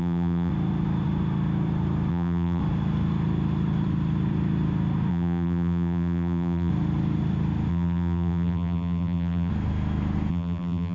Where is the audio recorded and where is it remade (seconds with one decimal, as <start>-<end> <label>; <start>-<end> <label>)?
0.0-0.5 remade; 0.5-2.1 recorded; 2.1-2.6 remade; 2.6-5.1 recorded; 5.1-6.7 remade; 6.7-7.7 recorded; 7.7-9.5 remade; 9.5-10.3 recorded; 10.3-10.9 remade